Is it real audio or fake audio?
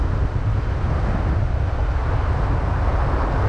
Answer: real